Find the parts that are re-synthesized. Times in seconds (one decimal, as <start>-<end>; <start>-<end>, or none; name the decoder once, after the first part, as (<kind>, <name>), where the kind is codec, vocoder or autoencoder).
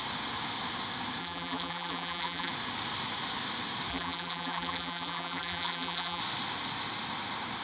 1.2-2.5 (vocoder, BigVGAN v2); 3.9-6.2